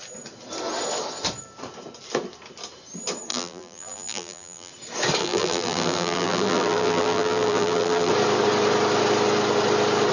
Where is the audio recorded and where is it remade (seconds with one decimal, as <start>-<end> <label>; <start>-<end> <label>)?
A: 0.0-3.3 recorded; 3.3-4.7 remade; 4.7-5.2 recorded; 5.2-8.1 remade; 8.1-10.1 recorded